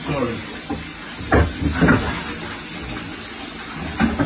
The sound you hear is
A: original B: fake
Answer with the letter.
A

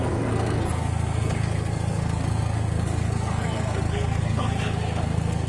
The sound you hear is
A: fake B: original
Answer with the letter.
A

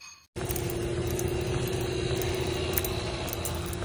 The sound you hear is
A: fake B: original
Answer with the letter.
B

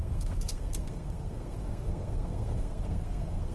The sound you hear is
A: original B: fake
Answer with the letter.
B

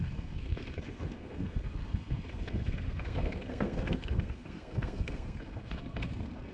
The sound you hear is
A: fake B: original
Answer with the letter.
A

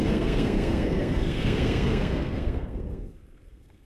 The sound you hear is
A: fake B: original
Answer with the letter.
A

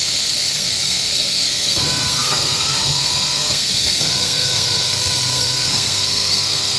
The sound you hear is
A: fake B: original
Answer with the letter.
A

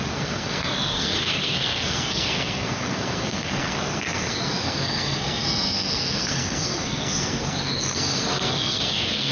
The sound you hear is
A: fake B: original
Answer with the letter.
A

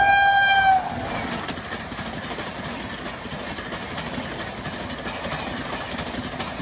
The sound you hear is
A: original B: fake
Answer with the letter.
A